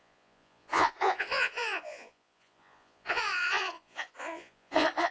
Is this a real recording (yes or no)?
no